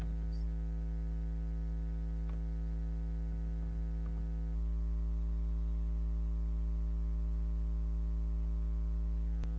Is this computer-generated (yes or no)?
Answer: no